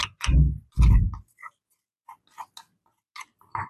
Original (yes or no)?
yes